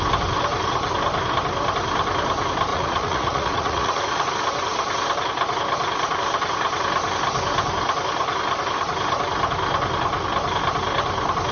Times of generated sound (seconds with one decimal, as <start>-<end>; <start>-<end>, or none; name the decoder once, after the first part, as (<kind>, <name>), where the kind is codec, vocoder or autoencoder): 2.7-4.3 (vocoder, Vocos)